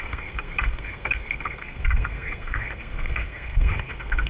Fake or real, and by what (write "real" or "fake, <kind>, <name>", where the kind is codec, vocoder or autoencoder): fake, codec, SNAC